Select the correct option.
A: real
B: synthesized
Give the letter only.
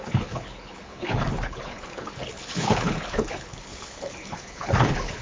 B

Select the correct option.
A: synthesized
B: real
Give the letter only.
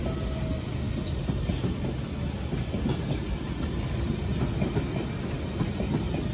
B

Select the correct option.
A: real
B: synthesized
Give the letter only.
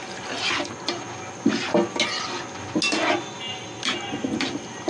A